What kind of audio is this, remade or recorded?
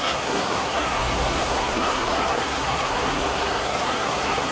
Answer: remade